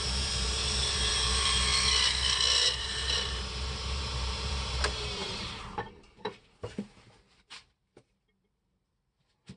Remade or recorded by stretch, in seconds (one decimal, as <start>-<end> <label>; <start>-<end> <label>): 0.0-1.7 remade; 1.7-2.8 recorded; 2.8-9.6 remade